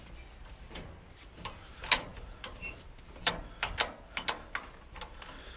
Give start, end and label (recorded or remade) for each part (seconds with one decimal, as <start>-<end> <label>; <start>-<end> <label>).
0.0-5.6 recorded